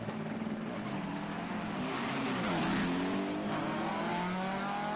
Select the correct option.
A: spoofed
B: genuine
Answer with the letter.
B